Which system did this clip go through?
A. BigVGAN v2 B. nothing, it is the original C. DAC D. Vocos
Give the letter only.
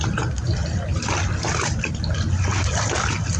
B